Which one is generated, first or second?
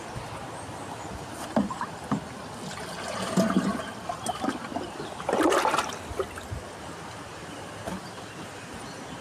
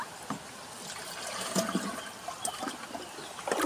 first